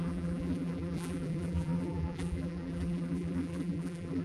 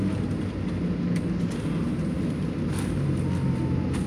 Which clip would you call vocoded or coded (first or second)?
first